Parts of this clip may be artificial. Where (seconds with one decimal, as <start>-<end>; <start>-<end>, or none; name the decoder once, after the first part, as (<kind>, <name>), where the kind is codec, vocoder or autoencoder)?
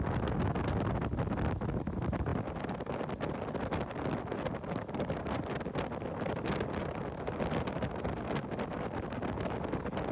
none